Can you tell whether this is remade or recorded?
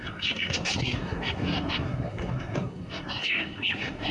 remade